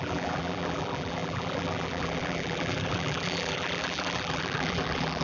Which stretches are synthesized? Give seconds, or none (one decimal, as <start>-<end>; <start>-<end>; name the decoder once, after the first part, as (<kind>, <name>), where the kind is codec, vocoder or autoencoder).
0.0-5.2 (vocoder, BigVGAN v2)